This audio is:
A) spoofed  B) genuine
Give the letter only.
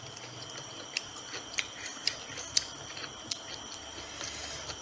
B